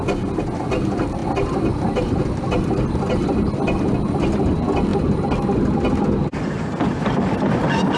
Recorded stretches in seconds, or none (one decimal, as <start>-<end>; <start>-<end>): 0.0-8.0